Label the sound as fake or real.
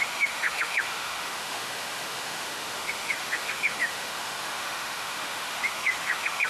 fake